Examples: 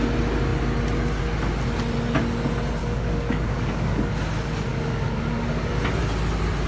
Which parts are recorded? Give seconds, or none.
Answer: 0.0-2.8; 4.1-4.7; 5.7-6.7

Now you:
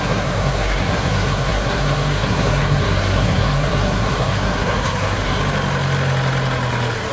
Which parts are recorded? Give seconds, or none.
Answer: 5.4-7.1

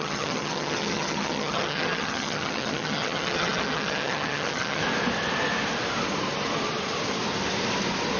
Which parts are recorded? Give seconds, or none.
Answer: 4.8-8.2